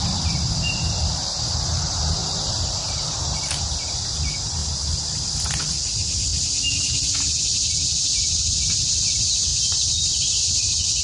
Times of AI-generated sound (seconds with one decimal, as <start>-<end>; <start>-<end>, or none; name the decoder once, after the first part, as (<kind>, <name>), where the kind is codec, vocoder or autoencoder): 2.2-3.9 (vocoder, BigVGAN v2); 9.5-10.6